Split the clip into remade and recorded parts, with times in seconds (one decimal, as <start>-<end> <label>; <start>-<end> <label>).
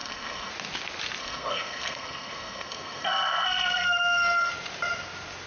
0.0-0.5 remade; 0.5-1.2 recorded; 1.2-4.5 remade; 4.5-5.5 recorded